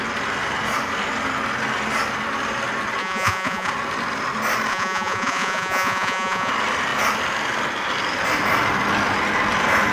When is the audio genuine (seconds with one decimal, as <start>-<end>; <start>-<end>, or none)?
0.0-3.0; 3.7-4.7; 6.5-9.9